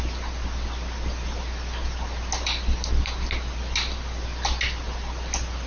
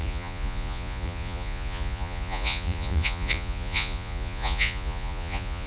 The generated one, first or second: second